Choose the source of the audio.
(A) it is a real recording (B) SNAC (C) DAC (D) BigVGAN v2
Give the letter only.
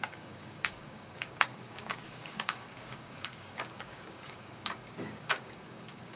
C